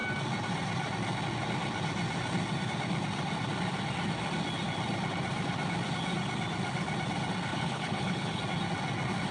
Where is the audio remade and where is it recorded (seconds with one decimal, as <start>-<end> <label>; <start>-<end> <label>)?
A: 0.0-7.5 recorded; 7.5-8.4 remade; 8.4-9.3 recorded